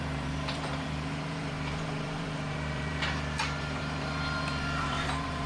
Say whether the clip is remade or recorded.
remade